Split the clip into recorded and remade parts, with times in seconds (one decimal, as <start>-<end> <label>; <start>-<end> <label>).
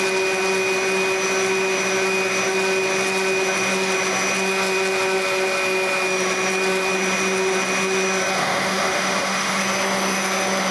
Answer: 0.0-8.4 recorded; 8.4-9.6 remade; 9.6-10.7 recorded